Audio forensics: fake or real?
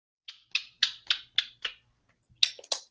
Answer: real